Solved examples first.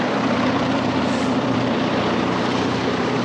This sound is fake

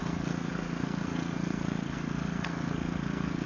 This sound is fake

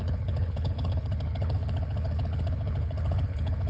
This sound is fake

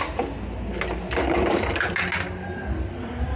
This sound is real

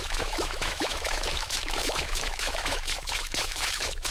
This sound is fake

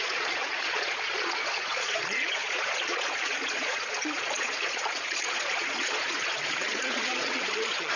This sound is fake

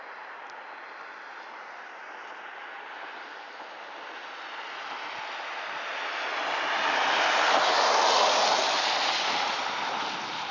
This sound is real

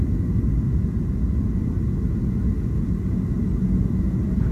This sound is real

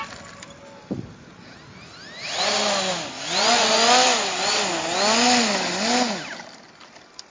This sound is real